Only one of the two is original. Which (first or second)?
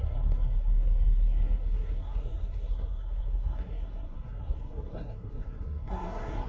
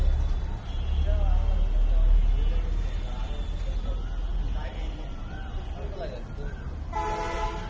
second